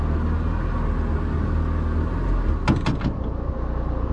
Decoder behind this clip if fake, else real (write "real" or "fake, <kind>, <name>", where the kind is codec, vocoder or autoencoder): real